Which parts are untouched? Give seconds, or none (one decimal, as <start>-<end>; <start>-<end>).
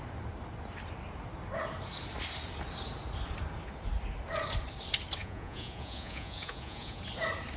0.0-5.2; 7.0-7.6